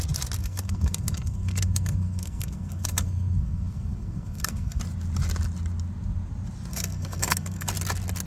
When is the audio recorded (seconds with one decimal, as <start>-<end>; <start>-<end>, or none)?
0.0-0.4; 4.8-6.7; 7.7-8.3